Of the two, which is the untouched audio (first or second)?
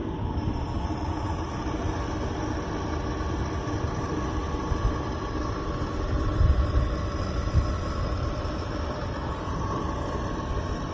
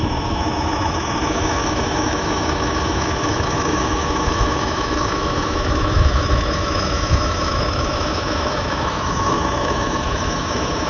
first